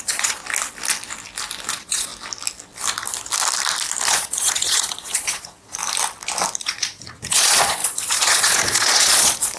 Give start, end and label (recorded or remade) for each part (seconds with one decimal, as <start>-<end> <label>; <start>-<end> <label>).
0.0-0.4 remade; 0.4-1.7 recorded; 1.7-2.1 remade; 2.1-4.1 recorded; 4.1-5.8 remade; 5.8-6.6 recorded; 6.6-9.6 remade